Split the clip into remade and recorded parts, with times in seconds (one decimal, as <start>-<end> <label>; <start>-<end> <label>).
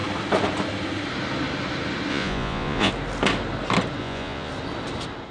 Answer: 0.0-2.1 recorded; 2.1-2.9 remade; 2.9-4.0 recorded; 4.0-4.5 remade; 4.5-5.3 recorded